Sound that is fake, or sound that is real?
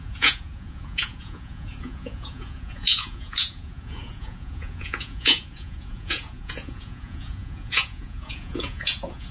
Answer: fake